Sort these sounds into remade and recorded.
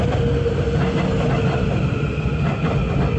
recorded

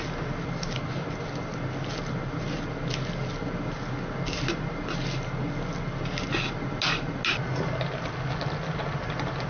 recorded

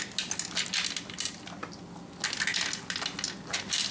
recorded